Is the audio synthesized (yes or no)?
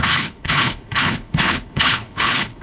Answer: yes